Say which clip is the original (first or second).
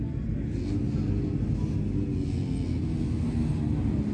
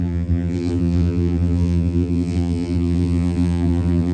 first